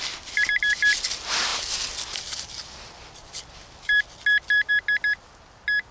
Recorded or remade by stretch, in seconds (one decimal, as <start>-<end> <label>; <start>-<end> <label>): 0.0-5.9 recorded